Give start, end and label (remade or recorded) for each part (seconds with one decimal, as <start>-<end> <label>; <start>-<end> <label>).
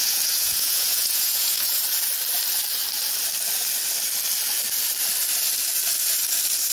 0.0-1.8 remade; 1.8-6.7 recorded